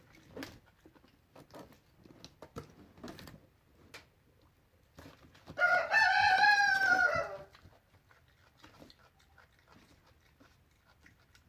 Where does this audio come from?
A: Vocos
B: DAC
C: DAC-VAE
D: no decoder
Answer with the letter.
D